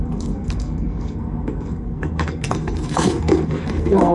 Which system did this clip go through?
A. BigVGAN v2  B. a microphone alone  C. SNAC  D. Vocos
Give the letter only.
C